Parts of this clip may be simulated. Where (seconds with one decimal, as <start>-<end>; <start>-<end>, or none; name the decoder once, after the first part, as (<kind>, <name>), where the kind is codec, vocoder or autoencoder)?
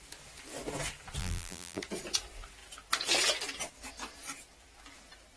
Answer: 1.2-1.8 (vocoder, BigVGAN v2)